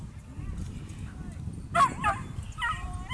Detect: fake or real real